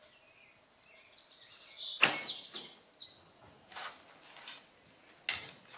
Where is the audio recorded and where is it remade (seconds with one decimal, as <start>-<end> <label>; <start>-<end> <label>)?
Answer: 0.0-5.8 recorded